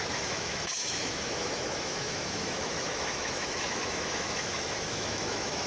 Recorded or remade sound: remade